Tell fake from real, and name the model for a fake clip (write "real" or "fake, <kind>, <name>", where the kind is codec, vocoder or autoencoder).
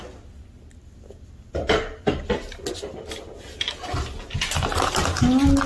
real